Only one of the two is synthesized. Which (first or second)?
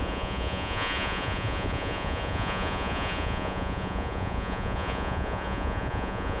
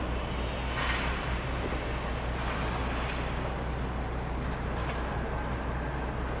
first